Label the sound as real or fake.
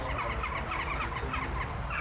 real